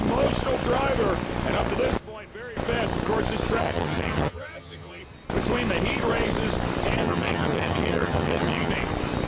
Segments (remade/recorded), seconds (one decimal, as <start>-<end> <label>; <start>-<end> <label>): 0.0-3.6 recorded; 3.6-5.0 remade; 5.0-7.0 recorded; 7.0-8.7 remade; 8.7-9.3 recorded